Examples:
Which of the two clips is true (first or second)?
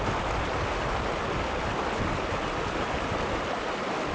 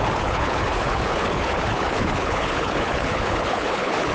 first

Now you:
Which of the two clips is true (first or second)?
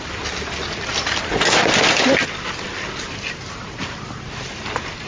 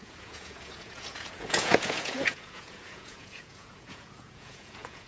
first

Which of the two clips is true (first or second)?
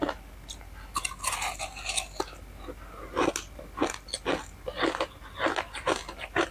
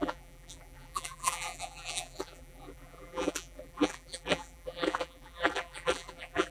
first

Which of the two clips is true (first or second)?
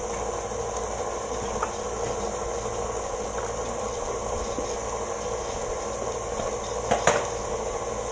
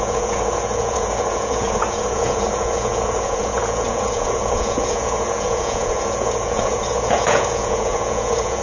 first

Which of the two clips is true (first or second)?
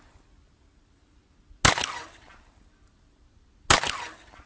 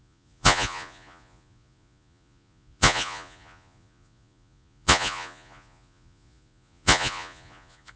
first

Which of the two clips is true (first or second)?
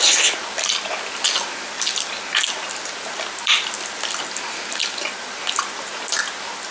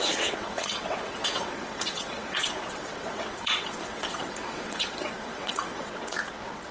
first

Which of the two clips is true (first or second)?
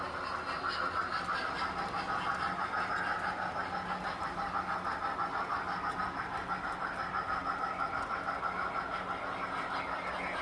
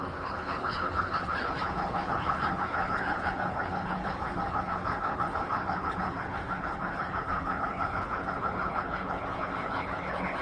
first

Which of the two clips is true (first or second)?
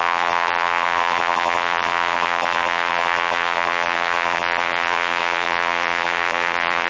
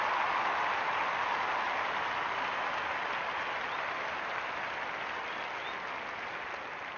second